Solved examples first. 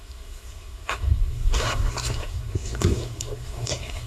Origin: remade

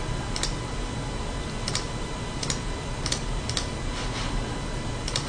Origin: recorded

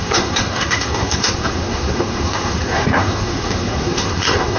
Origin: remade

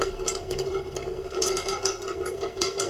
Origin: remade